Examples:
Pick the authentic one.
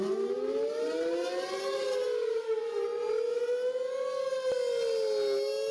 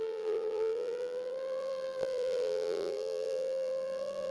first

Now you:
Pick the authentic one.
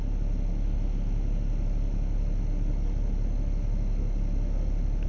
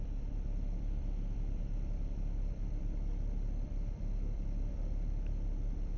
first